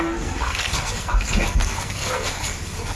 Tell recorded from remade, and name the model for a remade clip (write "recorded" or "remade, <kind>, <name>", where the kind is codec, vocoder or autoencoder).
remade, codec, SNAC